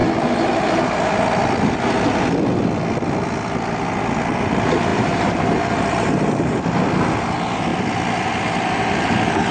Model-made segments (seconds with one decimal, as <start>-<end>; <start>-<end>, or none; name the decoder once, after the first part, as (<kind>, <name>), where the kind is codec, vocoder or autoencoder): 4.9-6.6 (vocoder, BigVGAN v2)